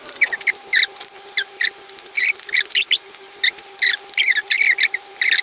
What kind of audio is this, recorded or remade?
recorded